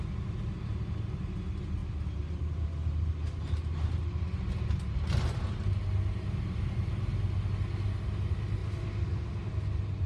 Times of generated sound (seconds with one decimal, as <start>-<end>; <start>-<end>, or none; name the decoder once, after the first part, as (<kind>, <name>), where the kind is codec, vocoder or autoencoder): none